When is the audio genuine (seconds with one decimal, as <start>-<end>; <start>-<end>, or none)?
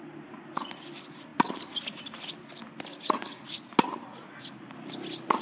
0.0-5.4